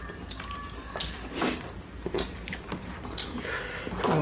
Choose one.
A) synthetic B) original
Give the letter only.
B